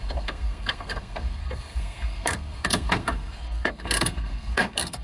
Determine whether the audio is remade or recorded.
remade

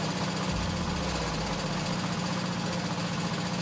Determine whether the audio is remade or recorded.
recorded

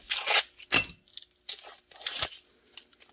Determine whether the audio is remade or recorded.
recorded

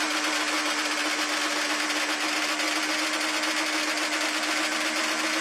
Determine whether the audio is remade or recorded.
recorded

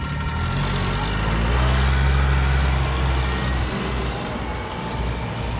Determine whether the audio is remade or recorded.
recorded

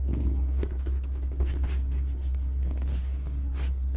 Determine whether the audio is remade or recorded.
remade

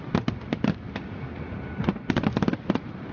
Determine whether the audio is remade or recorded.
recorded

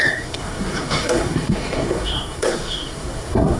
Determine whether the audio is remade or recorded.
remade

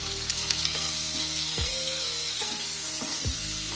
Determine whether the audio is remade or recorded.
remade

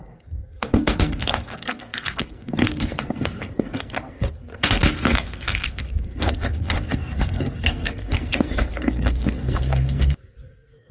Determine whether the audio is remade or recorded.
remade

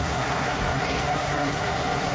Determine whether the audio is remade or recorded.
remade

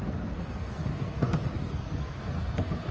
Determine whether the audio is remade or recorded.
remade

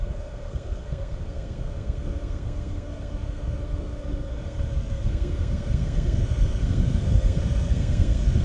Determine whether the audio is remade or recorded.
remade